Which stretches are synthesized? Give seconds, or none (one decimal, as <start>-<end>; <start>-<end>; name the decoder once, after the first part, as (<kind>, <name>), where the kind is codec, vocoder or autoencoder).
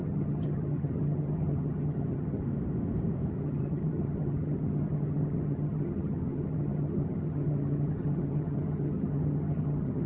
0.0-2.4 (vocoder, HiFi-GAN); 3.3-10.1